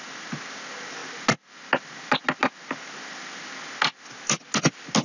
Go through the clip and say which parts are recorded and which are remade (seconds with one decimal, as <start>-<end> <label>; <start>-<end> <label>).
0.0-5.0 recorded